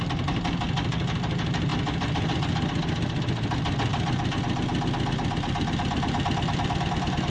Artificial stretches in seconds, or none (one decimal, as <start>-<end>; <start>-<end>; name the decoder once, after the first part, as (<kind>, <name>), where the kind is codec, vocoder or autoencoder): none